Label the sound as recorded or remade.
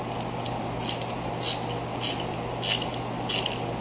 recorded